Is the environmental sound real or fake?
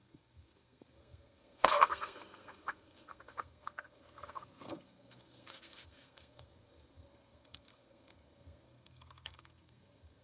fake